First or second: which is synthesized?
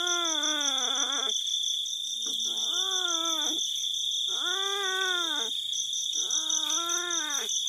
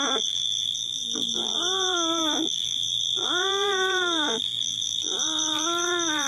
second